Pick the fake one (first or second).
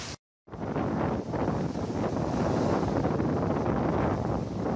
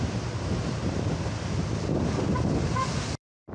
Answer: second